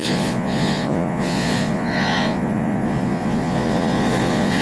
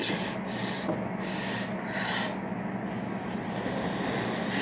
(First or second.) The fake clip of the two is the first